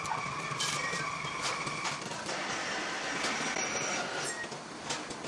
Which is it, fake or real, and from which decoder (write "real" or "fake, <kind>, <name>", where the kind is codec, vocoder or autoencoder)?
real